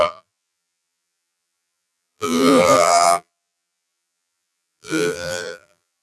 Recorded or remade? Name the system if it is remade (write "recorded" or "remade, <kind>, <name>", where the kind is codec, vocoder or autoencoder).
remade, vocoder, BigVGAN v2